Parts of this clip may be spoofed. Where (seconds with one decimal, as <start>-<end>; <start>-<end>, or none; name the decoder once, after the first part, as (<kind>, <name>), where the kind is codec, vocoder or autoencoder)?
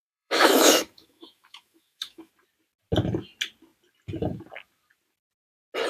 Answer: 0.0-2.3 (autoencoder, DAC-VAE)